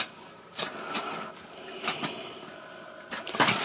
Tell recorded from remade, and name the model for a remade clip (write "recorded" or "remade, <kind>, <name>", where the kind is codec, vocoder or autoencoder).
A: recorded